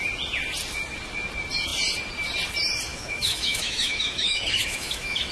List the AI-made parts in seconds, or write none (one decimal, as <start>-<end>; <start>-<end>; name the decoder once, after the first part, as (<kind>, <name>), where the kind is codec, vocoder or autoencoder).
2.9-5.3 (autoencoder, DAC-VAE)